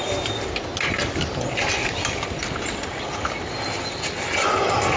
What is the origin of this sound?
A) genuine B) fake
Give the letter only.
A